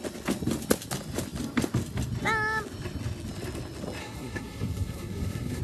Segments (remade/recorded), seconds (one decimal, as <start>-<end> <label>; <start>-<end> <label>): 0.0-4.0 recorded; 4.0-5.6 remade